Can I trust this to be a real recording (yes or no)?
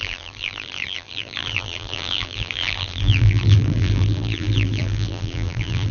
no